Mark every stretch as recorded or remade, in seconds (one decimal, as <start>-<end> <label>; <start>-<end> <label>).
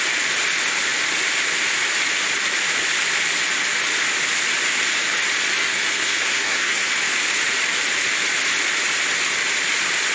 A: 0.0-5.6 recorded; 5.6-6.9 remade; 6.9-10.1 recorded